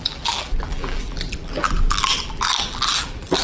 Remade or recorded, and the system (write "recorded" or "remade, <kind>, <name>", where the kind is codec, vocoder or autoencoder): remade, vocoder, BigVGAN v2